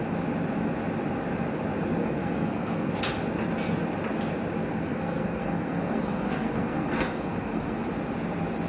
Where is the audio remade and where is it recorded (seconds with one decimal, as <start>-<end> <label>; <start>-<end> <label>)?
0.0-2.0 recorded; 2.0-2.9 remade; 2.9-4.6 recorded; 4.6-7.8 remade; 7.8-8.7 recorded